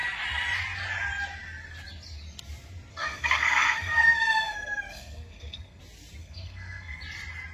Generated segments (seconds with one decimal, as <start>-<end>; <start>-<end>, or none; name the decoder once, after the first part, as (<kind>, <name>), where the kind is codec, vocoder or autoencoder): 2.9-5.8 (codec, SNAC); 6.2-7.0